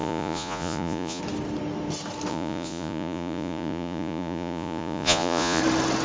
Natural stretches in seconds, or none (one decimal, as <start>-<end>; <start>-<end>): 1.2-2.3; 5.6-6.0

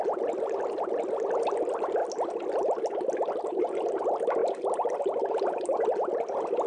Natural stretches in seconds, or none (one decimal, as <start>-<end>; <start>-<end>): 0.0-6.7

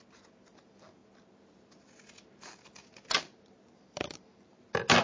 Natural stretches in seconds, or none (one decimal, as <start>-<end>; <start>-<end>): 0.0-5.0

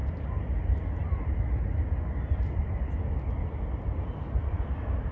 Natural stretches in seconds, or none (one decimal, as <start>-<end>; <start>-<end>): 0.0-5.1

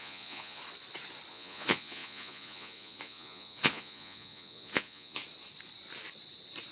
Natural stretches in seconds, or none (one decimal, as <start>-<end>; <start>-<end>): 0.6-1.3; 5.2-6.7

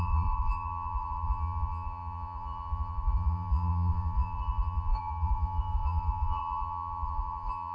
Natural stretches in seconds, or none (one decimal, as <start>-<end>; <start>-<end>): none

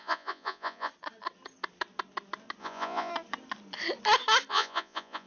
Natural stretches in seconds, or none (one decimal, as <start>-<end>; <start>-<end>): 0.9-2.6; 3.1-4.5

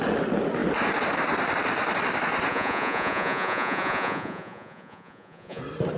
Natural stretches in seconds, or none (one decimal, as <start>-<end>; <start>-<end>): 0.0-2.5; 5.6-6.0